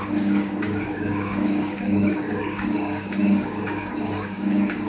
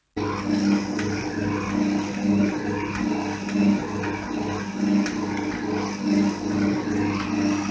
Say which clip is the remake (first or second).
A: first